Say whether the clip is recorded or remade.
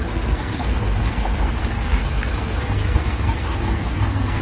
remade